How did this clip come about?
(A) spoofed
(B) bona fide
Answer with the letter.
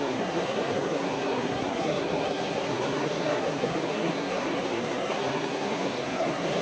A